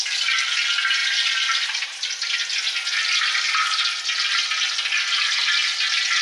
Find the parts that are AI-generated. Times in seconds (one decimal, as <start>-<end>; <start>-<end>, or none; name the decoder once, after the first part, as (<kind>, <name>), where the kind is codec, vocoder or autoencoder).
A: none